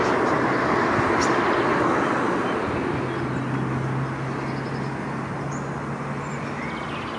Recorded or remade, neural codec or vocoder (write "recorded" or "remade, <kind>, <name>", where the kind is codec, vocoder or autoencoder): recorded